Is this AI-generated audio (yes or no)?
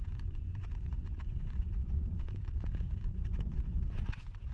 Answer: yes